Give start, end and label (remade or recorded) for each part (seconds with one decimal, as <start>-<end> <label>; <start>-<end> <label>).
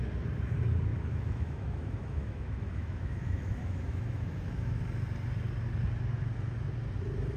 0.0-0.9 recorded; 0.9-4.8 remade; 4.8-7.4 recorded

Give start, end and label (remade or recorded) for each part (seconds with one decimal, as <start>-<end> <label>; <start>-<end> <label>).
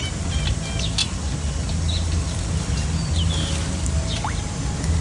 0.0-5.0 recorded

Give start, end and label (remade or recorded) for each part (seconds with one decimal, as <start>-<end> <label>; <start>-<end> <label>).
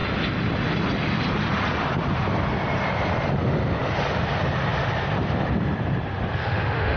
0.0-6.4 recorded; 6.4-7.0 remade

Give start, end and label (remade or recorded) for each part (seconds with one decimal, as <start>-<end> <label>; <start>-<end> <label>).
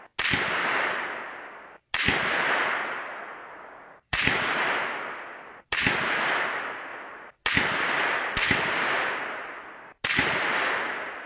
0.0-3.4 recorded; 3.4-4.5 remade; 4.5-11.3 recorded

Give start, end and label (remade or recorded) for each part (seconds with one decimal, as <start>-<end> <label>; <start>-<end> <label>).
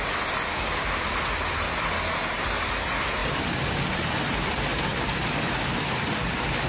0.0-0.5 recorded; 0.5-1.1 remade; 1.1-6.7 recorded